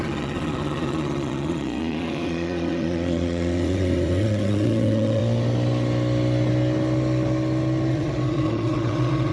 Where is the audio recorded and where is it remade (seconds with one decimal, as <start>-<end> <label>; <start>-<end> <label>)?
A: 0.0-5.2 remade; 5.2-7.9 recorded; 7.9-9.3 remade